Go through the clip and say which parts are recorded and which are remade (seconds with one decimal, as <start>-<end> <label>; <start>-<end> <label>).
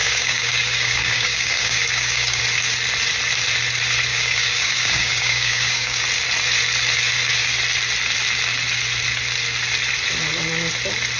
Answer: 0.0-2.4 remade; 2.4-4.1 recorded; 4.1-6.0 remade; 6.0-11.2 recorded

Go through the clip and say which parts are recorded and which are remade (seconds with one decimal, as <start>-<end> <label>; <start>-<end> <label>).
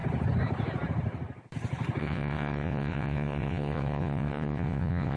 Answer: 0.0-2.0 recorded; 2.0-5.2 remade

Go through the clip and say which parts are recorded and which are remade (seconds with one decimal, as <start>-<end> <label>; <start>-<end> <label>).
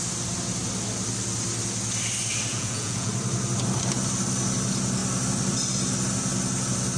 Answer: 0.0-2.5 recorded; 2.5-3.1 remade; 3.1-7.0 recorded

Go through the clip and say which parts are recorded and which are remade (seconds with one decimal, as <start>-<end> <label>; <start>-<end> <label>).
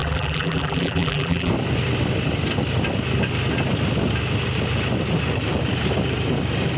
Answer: 0.0-1.5 remade; 1.5-6.8 recorded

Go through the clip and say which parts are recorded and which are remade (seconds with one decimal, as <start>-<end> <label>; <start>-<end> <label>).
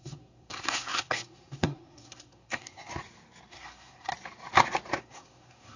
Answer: 0.0-2.9 remade; 2.9-3.5 recorded; 3.5-4.1 remade; 4.1-5.0 recorded; 5.0-5.8 remade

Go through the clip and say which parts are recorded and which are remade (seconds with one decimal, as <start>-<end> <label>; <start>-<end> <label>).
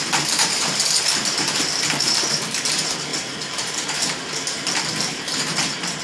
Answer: 0.0-6.0 remade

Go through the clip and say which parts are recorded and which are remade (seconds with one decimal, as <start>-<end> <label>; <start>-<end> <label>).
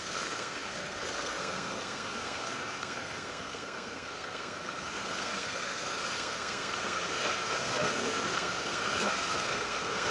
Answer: 0.0-10.1 remade